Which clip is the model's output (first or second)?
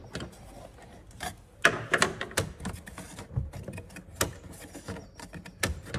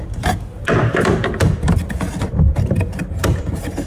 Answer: second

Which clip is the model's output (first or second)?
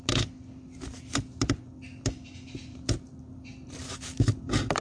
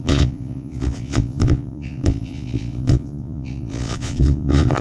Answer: second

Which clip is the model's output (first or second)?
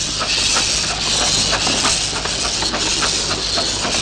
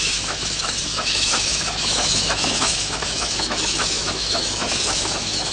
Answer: second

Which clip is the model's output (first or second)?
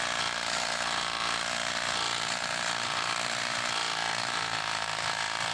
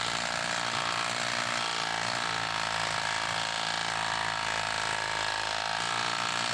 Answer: first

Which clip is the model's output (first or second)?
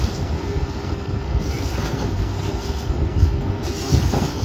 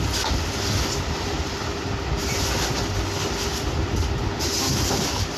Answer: first